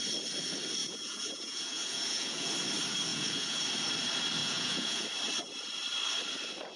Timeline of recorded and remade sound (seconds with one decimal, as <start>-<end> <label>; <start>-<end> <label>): 0.0-0.8 recorded; 0.8-2.5 remade; 2.5-3.1 recorded; 3.1-3.6 remade; 3.6-4.4 recorded; 4.4-5.0 remade; 5.0-6.8 recorded